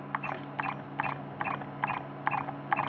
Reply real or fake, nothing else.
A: real